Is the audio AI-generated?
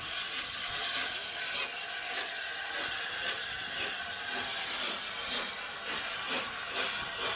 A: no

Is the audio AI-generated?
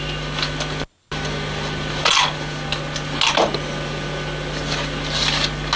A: no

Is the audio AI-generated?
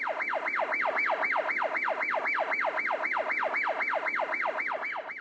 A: no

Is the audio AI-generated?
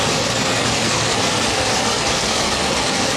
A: yes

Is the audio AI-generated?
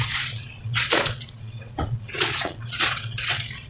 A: yes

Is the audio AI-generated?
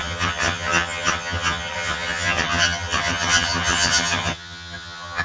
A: yes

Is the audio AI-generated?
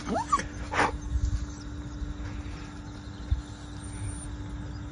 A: no